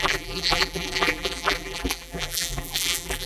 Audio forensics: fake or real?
fake